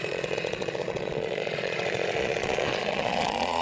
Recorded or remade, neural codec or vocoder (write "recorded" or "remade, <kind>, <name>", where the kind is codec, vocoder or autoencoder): remade, vocoder, Vocos